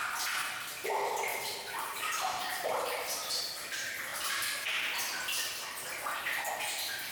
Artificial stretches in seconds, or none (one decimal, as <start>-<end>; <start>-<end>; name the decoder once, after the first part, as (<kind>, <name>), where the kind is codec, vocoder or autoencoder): 1.3-3.4 (vocoder, BigVGAN v2)